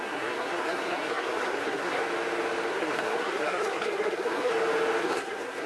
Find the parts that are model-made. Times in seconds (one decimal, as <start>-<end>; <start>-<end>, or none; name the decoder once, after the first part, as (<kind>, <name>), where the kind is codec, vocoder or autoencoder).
0.0-2.0 (codec, SNAC); 2.7-4.5; 5.0-5.7